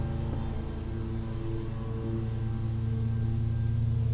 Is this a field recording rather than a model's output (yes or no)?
yes